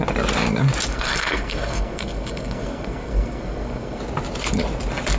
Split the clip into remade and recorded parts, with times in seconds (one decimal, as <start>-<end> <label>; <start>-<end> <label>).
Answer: 0.0-0.9 recorded; 0.9-4.0 remade; 4.0-5.2 recorded